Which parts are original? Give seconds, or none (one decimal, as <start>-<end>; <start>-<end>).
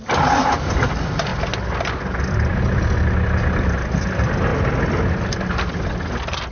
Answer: 0.0-6.5